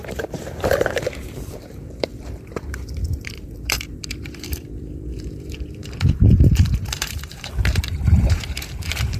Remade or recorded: remade